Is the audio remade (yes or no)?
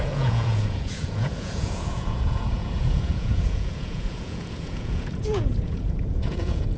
yes